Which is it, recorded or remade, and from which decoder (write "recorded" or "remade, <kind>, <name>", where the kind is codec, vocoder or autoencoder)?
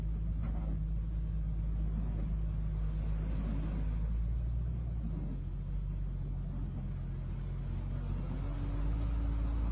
recorded